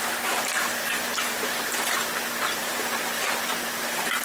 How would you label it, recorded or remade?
remade